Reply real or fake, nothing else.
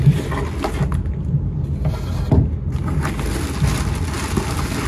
real